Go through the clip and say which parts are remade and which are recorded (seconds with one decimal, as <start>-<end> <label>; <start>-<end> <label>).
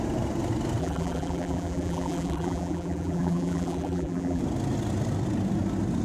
0.0-0.8 recorded; 0.8-4.4 remade; 4.4-6.0 recorded